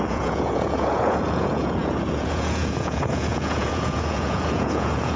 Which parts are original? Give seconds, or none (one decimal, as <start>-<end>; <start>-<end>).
none